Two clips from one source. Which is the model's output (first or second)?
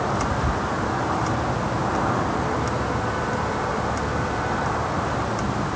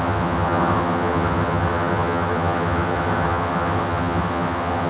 second